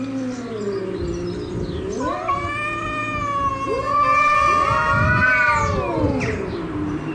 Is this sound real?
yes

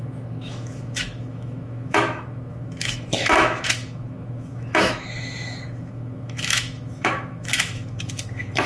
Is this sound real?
no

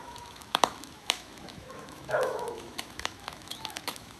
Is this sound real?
no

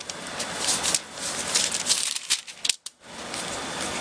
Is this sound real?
yes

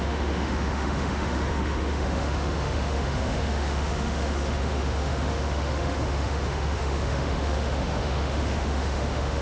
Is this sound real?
no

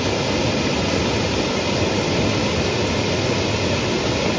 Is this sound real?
yes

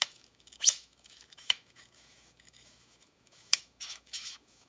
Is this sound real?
no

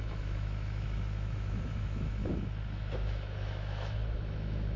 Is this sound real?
no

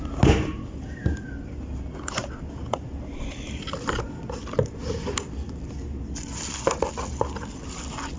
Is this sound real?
yes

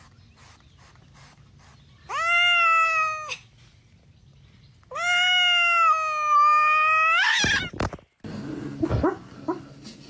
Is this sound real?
yes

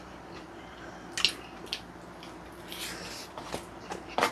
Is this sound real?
yes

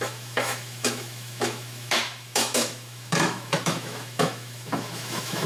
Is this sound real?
no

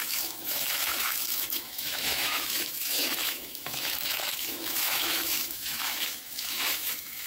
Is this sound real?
no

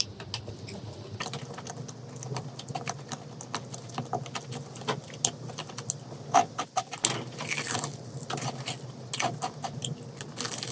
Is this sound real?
yes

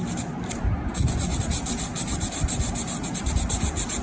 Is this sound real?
yes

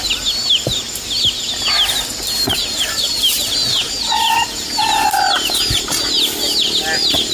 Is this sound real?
yes